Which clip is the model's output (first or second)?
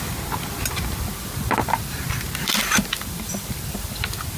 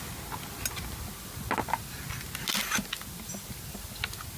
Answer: first